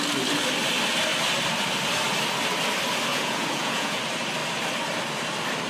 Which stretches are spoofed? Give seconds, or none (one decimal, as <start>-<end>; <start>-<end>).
3.1-4.0